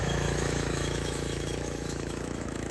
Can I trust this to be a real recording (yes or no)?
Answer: no